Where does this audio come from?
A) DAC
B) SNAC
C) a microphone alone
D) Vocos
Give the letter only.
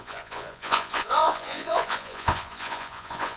D